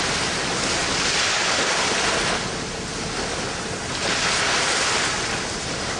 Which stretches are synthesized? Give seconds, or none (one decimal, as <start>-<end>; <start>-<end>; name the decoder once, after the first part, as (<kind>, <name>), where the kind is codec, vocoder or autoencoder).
none